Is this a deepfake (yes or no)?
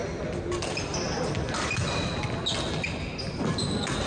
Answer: no